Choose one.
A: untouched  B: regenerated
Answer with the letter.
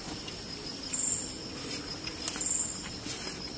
A